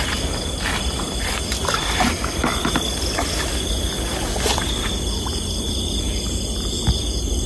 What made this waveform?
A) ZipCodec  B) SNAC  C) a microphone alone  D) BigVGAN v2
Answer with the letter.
C